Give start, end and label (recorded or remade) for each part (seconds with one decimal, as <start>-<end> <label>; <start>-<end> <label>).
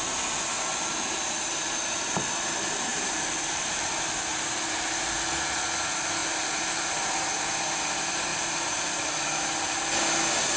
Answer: 0.0-2.9 recorded; 2.9-3.9 remade; 3.9-4.3 recorded; 4.3-5.3 remade; 5.3-6.2 recorded; 6.2-7.3 remade; 7.3-8.3 recorded; 8.3-9.7 remade; 9.7-10.6 recorded